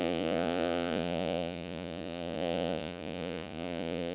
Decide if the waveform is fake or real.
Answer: fake